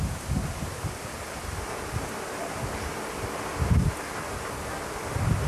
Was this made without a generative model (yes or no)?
yes